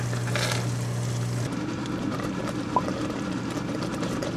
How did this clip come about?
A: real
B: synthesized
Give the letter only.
A